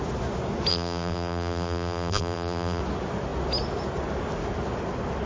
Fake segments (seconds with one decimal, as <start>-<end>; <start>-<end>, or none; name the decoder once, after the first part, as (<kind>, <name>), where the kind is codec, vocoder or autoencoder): 0.7-2.8 (vocoder, BigVGAN v2)